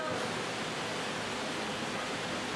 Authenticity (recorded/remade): recorded